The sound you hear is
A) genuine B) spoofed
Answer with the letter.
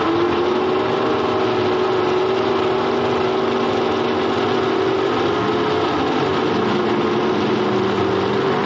A